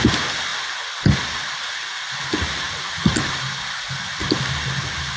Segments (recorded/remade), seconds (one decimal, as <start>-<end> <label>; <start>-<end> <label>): 0.0-5.2 recorded